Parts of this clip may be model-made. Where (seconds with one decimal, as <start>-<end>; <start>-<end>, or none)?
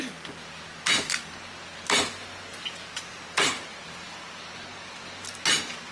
3.7-4.9